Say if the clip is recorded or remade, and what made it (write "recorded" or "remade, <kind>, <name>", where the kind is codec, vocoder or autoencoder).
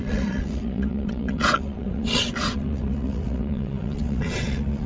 remade, vocoder, WaveNeXt